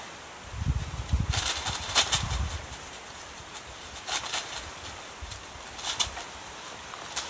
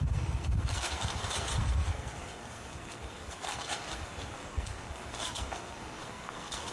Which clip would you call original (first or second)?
first